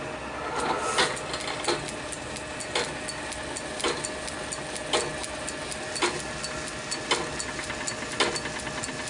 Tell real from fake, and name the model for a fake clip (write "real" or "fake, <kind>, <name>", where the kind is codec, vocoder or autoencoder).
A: real